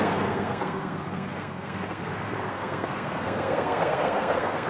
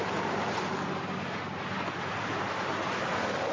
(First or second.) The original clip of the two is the second